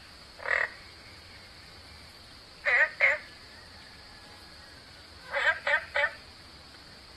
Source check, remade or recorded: remade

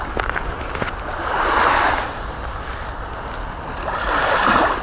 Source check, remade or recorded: recorded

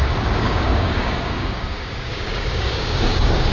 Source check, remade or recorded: remade